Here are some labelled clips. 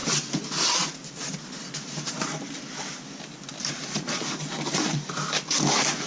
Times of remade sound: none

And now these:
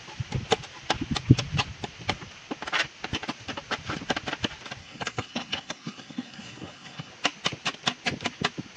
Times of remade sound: 4.8-7.1 (codec, SNAC)

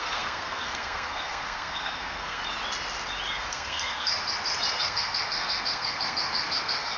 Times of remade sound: 0.0-2.4 (codec, SNAC); 3.5-4.2; 4.8-7.0

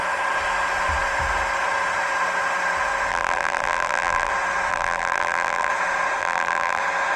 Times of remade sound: 3.1-4.3 (vocoder, BigVGAN v2); 4.7-5.7; 6.2-6.8

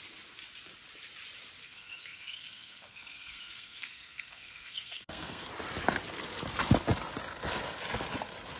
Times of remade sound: 1.6-5.5 (codec, SNAC)

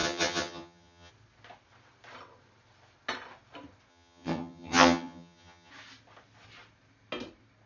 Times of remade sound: 0.0-1.1 (vocoder, HiFi-GAN); 3.9-5.7

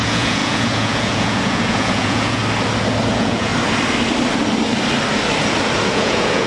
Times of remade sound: 0.0-2.4 (vocoder, Vocos); 3.1-3.5; 5.9-6.5

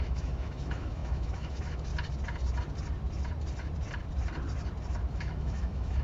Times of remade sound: 0.0-1.9 (autoencoder, DAC-VAE); 5.1-6.0